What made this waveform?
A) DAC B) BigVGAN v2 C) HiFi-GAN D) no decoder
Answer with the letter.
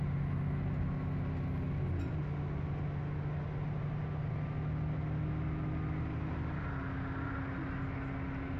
D